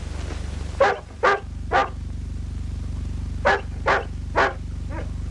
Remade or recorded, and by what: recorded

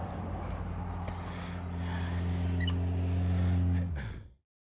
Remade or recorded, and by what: recorded